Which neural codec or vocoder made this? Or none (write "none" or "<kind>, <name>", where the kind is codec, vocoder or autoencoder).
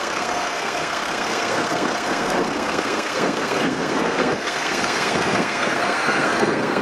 codec, SNAC